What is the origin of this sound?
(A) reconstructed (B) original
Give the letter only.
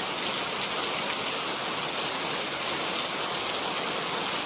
B